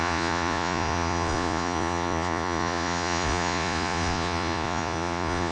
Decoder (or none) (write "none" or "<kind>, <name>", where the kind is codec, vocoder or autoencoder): vocoder, Vocos